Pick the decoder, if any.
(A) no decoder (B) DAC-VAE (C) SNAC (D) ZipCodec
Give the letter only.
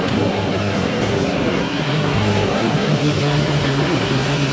C